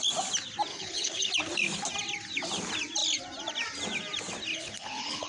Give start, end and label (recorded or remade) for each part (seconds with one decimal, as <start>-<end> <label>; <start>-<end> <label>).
0.0-0.7 recorded; 0.7-1.3 remade; 1.3-4.5 recorded; 4.5-5.3 remade